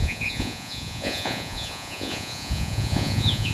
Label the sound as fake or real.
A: fake